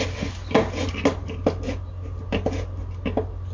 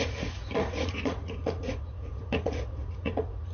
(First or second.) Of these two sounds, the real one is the first